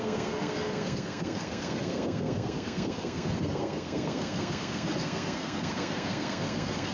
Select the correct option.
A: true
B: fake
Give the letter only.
B